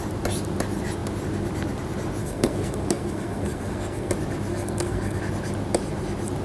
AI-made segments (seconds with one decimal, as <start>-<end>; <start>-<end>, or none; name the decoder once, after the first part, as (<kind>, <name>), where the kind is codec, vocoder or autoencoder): 2.2-4.1 (codec, SNAC); 4.5-5.2